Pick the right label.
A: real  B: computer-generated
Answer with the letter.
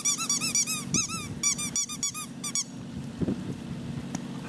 A